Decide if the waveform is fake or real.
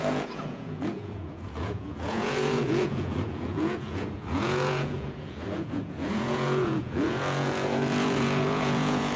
fake